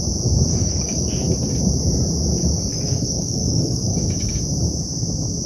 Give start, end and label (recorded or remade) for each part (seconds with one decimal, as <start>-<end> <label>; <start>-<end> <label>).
0.0-0.5 recorded; 0.5-1.1 remade; 1.1-2.7 recorded; 2.7-4.4 remade; 4.4-5.5 recorded